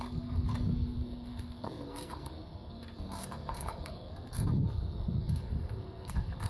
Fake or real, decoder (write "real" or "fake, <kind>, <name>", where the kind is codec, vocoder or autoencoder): fake, codec, SNAC